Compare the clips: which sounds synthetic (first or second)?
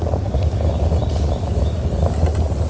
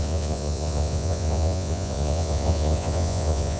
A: second